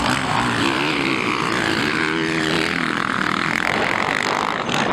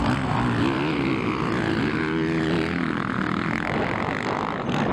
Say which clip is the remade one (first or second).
first